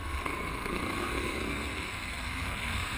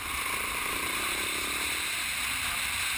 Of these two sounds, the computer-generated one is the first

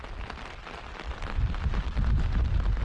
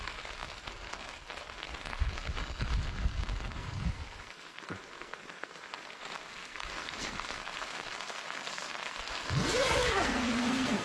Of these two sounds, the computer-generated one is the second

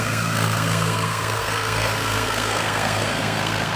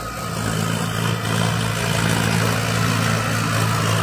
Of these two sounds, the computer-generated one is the first